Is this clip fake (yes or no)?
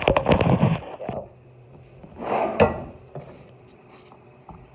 yes